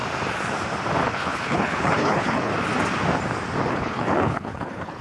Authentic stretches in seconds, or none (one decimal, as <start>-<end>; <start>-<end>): 0.0-1.1; 2.5-3.7